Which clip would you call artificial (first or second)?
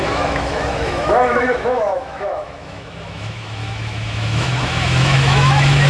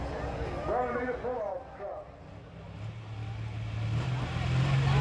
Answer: first